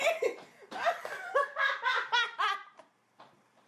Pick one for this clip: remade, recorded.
remade